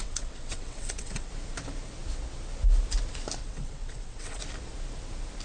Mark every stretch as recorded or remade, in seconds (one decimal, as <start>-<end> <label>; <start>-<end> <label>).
0.0-1.3 remade; 1.3-3.4 recorded; 3.4-4.4 remade; 4.4-5.4 recorded